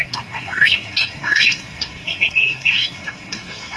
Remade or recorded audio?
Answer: remade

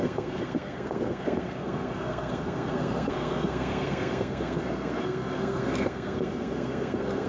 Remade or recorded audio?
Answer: remade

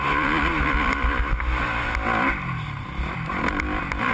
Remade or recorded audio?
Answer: recorded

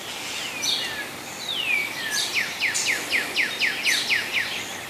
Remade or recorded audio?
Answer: recorded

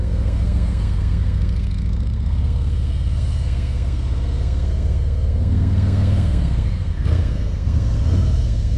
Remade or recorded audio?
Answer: remade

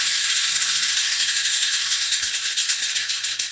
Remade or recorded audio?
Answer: remade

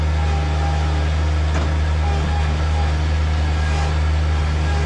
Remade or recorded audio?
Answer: recorded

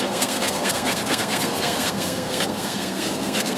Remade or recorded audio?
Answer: remade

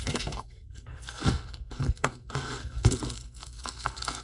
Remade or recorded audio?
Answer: remade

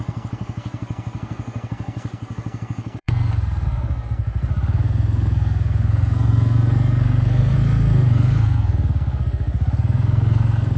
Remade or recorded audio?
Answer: remade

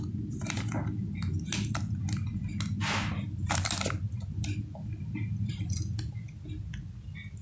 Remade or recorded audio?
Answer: recorded